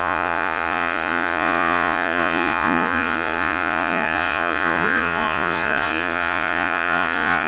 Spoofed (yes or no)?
yes